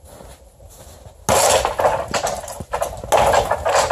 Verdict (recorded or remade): recorded